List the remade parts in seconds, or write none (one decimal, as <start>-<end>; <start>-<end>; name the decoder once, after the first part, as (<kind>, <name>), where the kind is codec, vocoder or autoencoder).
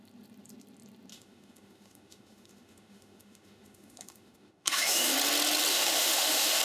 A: 1.1-5.1 (autoencoder, DAC-VAE); 5.7-6.6